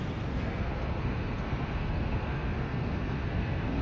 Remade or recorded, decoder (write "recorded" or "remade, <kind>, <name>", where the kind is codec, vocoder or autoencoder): remade, codec, SNAC